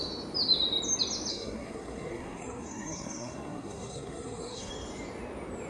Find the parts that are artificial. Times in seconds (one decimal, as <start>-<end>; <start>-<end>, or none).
1.3-4.7